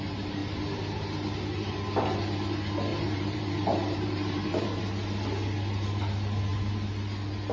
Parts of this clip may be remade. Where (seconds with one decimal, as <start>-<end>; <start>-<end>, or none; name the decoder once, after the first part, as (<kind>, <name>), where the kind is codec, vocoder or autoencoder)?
2.9-4.8 (vocoder, BigVGAN v2)

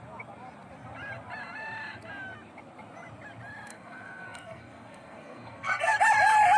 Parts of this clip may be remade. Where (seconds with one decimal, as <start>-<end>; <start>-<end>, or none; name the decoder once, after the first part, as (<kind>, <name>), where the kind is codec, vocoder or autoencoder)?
3.7-6.0 (codec, SNAC)

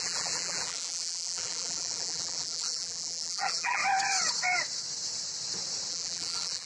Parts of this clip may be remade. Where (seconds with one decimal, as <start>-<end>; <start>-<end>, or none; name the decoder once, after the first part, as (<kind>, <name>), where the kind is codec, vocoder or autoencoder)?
0.0-3.8 (vocoder, BigVGAN v2); 5.9-6.7

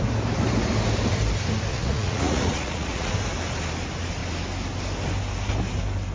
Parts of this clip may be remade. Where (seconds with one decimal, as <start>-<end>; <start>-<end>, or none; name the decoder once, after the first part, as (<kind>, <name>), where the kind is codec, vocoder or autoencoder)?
1.7-3.1 (vocoder, Vocos)

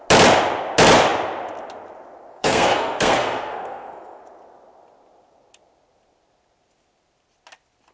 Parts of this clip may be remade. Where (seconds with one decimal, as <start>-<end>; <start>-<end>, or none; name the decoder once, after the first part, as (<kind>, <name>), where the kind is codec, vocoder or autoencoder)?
2.3-4.2 (codec, SNAC)

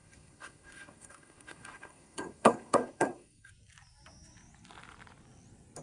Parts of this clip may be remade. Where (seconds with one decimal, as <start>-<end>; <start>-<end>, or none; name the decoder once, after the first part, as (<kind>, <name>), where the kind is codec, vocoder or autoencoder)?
0.0-3.5 (codec, SNAC)

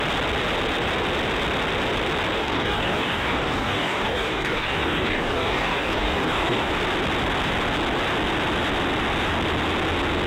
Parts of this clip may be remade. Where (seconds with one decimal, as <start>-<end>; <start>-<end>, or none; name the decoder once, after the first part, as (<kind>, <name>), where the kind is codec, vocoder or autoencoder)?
2.4-6.7 (codec, DAC)